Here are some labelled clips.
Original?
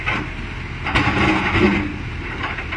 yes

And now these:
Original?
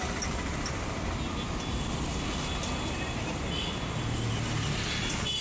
yes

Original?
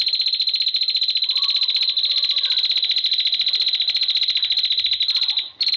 yes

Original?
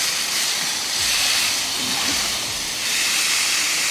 no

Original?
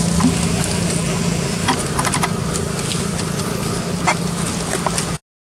yes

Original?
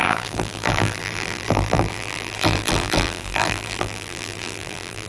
no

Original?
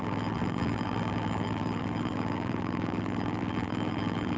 no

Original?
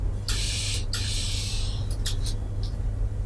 yes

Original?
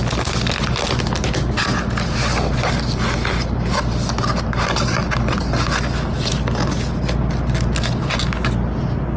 yes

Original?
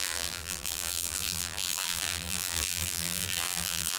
no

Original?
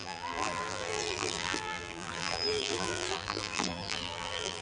no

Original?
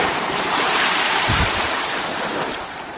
no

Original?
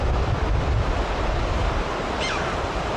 no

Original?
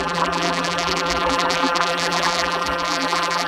no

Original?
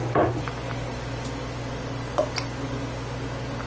yes